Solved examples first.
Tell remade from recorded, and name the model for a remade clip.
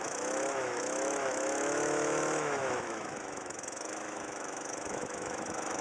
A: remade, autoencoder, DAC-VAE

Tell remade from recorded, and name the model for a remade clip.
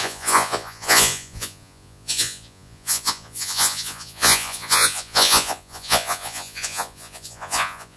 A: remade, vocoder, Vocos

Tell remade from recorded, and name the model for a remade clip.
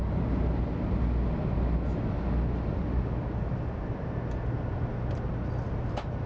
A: recorded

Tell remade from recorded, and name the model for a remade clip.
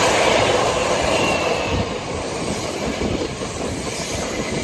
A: remade, vocoder, BigVGAN v2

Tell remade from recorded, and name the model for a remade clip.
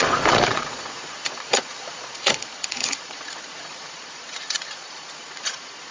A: remade, vocoder, Vocos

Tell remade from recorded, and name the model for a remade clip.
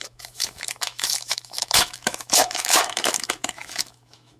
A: remade, autoencoder, DAC-VAE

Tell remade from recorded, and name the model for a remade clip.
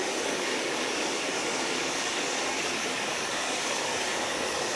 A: remade, codec, DAC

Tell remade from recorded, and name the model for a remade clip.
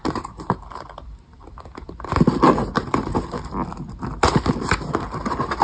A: recorded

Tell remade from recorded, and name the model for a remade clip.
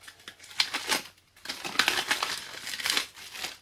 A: recorded